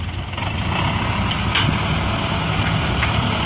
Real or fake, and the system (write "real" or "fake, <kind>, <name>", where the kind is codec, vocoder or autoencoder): real